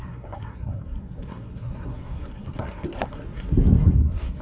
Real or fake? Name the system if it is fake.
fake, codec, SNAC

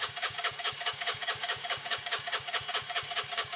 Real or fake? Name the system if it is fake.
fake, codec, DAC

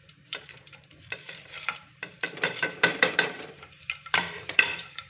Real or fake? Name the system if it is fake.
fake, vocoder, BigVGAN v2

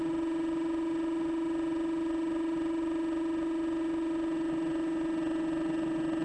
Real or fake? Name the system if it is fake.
real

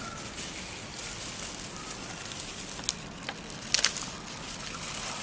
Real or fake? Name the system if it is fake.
real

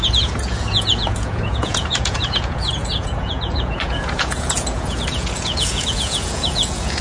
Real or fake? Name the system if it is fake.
fake, vocoder, Vocos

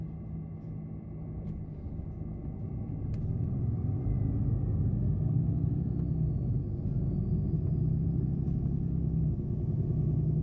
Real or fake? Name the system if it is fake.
real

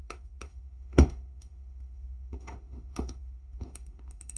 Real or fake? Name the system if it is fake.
fake, autoencoder, DAC-VAE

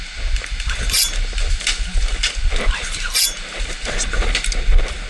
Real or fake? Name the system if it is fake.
real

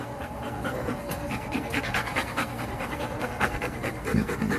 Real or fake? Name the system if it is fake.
fake, codec, SNAC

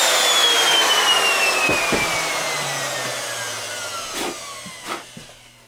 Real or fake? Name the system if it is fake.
real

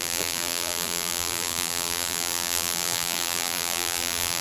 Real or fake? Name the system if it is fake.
fake, vocoder, BigVGAN v2